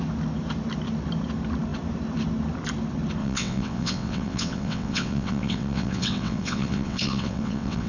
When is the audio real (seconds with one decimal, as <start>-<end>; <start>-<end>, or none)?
0.0-3.2